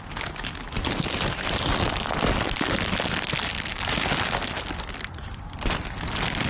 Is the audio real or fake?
real